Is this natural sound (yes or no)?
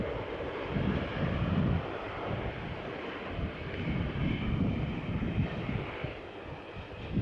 no